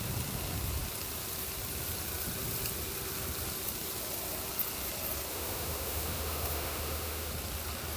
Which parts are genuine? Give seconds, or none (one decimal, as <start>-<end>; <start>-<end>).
0.0-5.3; 7.3-8.0